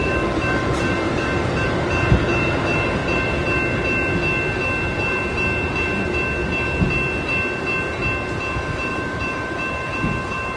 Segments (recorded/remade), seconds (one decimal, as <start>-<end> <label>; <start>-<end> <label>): 0.0-1.8 remade; 1.8-8.9 recorded; 8.9-9.9 remade; 9.9-10.6 recorded